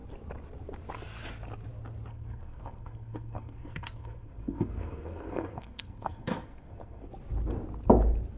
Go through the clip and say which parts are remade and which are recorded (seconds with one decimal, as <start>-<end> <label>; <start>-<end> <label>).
0.0-2.1 recorded; 2.1-7.1 remade; 7.1-8.4 recorded